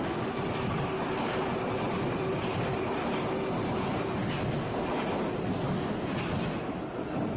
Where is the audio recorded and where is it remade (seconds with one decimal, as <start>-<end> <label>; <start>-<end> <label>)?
0.0-7.4 recorded